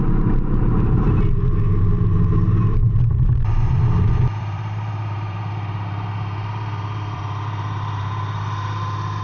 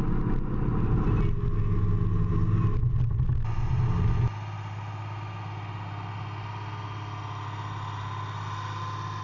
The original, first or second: second